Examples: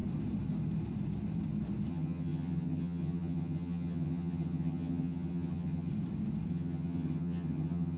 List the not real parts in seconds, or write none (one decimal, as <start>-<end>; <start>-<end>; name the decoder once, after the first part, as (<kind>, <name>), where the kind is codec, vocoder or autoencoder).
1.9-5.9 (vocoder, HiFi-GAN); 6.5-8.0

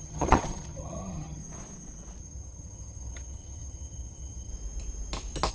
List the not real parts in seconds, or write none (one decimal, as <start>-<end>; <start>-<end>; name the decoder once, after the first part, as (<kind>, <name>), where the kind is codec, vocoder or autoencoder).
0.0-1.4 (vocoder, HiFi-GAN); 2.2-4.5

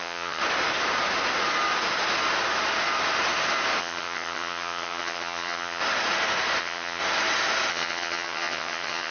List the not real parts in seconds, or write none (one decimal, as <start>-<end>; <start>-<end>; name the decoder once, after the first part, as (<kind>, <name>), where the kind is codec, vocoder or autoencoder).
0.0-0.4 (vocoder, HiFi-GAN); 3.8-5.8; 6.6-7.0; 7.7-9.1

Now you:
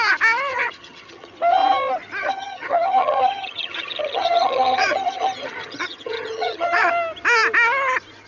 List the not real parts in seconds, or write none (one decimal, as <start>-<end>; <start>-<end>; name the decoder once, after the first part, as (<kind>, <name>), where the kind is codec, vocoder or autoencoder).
0.5-1.3 (vocoder, HiFi-GAN); 2.2-6.9

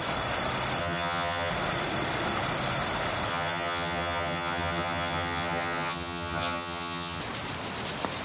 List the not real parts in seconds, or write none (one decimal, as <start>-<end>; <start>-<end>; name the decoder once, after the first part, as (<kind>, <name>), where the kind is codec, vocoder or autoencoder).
0.8-1.5 (vocoder, HiFi-GAN); 3.3-7.2

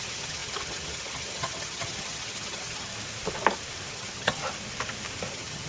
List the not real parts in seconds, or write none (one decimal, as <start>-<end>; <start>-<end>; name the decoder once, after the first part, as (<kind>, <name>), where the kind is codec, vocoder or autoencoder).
0.0-2.9 (vocoder, HiFi-GAN); 3.9-4.4; 5.3-5.7

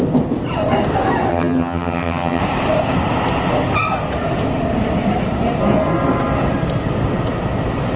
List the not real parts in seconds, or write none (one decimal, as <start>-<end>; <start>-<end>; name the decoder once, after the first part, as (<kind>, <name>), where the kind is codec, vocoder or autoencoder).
1.3-2.4 (vocoder, HiFi-GAN)